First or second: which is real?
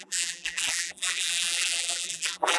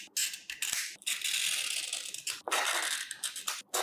second